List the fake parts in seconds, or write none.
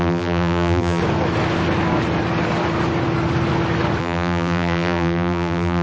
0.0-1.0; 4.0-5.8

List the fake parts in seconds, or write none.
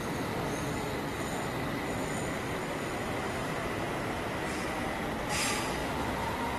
3.0-5.0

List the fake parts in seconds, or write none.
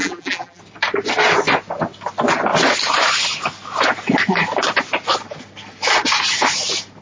0.0-0.6